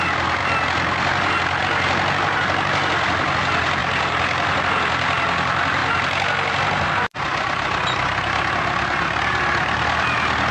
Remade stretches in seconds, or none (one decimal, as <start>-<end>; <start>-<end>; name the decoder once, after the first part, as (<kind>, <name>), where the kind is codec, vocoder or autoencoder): none